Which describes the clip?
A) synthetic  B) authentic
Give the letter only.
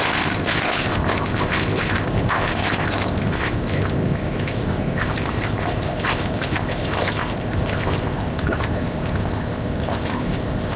A